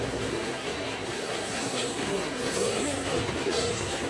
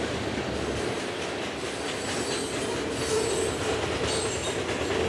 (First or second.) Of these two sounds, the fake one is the first